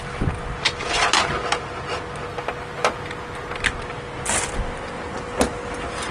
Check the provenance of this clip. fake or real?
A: real